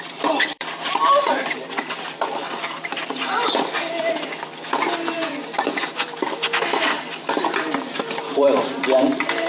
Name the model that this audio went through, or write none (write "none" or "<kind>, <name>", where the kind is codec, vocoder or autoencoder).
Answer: vocoder, BigVGAN v2